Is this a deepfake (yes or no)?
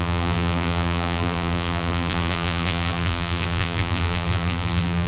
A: yes